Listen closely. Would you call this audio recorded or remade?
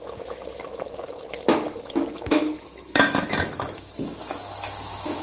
remade